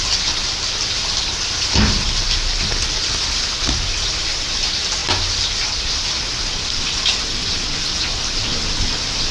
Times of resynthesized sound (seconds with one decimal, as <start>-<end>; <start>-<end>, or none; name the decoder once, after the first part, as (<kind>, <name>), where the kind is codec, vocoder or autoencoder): none